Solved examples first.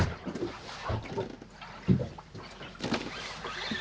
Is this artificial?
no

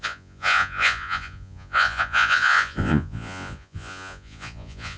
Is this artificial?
yes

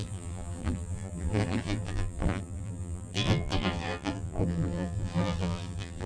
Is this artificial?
yes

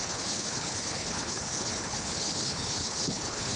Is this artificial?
yes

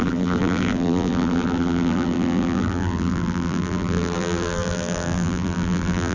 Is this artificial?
yes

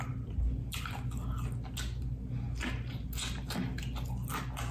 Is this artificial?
no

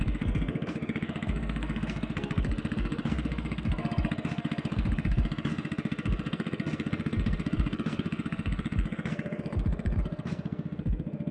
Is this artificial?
yes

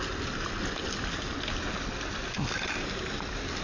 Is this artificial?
no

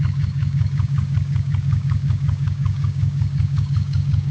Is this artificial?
yes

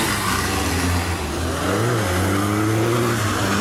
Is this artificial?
no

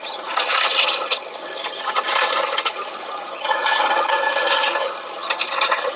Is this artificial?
yes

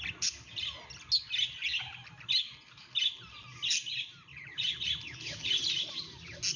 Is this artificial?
no